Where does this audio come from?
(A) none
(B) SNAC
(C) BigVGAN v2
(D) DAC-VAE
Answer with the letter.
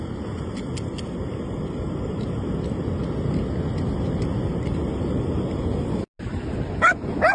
A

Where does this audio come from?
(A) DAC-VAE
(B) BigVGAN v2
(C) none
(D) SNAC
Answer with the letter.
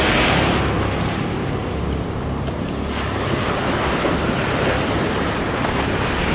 C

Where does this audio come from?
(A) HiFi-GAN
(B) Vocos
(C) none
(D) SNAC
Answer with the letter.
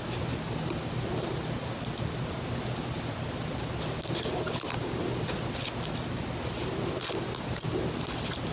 C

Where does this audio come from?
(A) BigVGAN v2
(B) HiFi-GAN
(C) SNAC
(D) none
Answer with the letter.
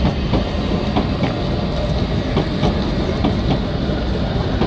D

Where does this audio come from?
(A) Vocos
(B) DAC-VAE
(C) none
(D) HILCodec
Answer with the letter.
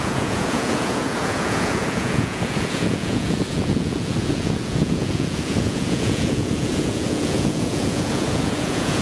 A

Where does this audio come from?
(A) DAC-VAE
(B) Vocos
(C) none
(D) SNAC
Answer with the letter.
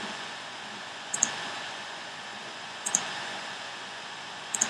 B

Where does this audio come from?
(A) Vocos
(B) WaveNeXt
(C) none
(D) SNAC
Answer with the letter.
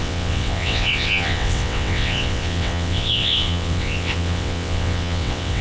B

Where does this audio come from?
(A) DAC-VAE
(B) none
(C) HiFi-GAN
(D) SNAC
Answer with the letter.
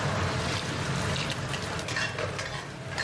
B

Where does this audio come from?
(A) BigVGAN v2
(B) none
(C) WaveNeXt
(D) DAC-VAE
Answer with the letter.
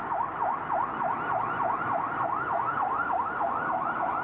B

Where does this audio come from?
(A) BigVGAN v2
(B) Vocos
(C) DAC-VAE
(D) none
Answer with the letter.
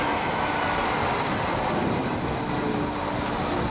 D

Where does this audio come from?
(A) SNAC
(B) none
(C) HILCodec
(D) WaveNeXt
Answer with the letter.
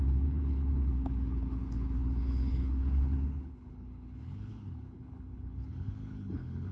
C